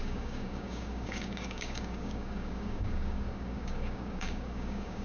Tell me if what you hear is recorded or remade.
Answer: remade